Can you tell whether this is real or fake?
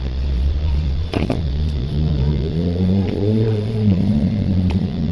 fake